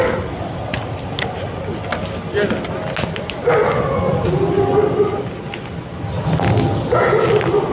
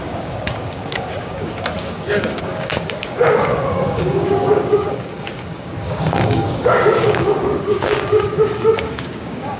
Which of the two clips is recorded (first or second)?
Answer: first